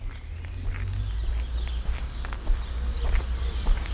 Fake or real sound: real